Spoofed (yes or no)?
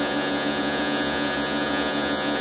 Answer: yes